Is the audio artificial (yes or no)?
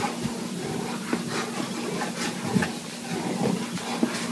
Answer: no